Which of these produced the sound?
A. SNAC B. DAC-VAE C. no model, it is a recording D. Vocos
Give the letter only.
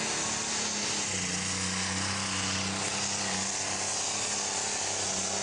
C